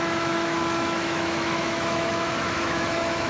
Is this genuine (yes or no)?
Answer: no